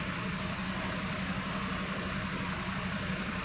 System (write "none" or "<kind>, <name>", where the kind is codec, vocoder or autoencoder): vocoder, BigVGAN v2